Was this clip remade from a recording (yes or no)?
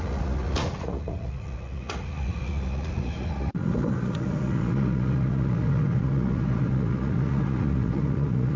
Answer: yes